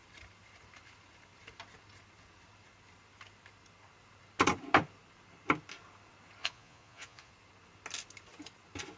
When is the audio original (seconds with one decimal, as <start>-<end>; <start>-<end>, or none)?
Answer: 0.0-6.4; 7.3-9.0